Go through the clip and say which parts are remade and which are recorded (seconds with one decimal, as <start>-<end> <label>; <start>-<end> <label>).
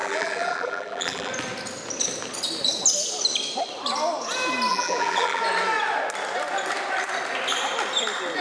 0.0-1.3 remade; 1.3-4.7 recorded; 4.7-5.4 remade; 5.4-8.4 recorded